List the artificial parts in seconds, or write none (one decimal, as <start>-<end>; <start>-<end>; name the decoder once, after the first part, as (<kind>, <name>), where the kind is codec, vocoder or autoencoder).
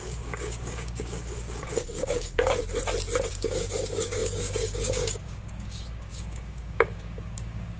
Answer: 0.0-2.6 (codec, DAC); 3.3-7.8